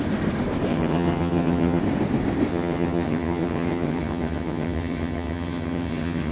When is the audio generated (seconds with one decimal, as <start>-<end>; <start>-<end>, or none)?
0.7-1.8; 2.5-6.3